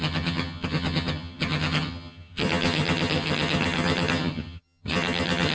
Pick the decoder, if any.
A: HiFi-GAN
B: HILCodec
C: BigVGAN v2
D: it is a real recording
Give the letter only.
A